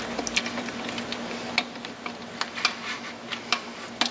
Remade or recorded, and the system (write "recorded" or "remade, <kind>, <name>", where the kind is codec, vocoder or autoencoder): recorded